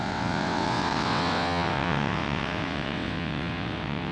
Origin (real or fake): fake